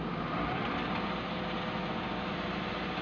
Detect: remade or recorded recorded